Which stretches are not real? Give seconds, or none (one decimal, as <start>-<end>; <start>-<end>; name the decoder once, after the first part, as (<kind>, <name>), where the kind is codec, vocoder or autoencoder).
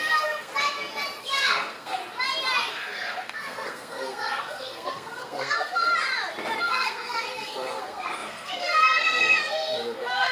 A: 0.0-0.5 (codec, SNAC); 1.2-2.0; 2.7-5.9; 6.6-10.3